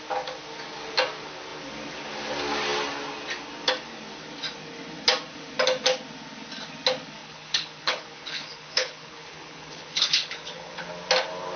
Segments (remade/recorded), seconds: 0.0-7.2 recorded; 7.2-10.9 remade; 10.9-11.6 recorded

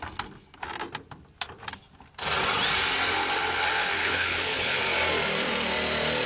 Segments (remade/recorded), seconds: 0.0-4.0 recorded; 4.0-4.8 remade; 4.8-6.3 recorded

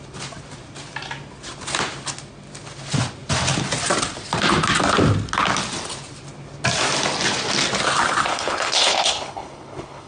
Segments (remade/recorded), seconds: 0.0-8.3 recorded; 8.3-10.1 remade

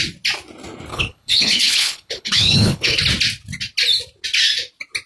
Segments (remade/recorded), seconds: 0.0-0.9 recorded; 0.9-3.0 remade; 3.0-5.1 recorded

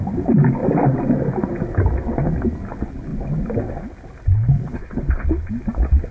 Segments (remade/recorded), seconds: 0.0-4.3 recorded; 4.3-5.5 remade; 5.5-6.1 recorded

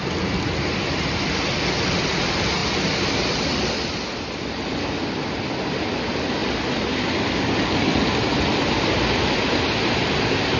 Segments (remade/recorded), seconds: 0.0-10.6 recorded